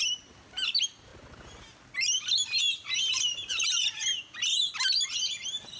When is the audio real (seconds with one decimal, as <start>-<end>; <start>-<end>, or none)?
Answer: 1.1-2.6